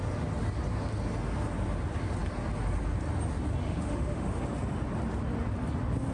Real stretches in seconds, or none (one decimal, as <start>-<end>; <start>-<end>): 0.0-3.6; 4.4-6.1